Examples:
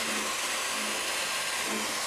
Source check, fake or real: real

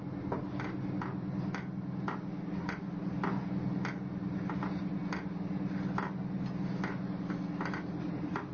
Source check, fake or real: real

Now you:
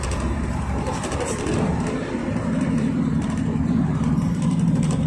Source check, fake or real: fake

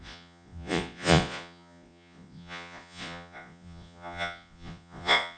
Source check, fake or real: fake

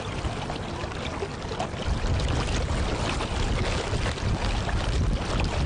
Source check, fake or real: real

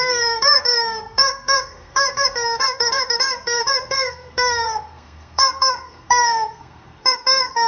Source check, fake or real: fake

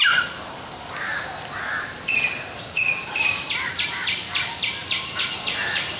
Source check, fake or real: real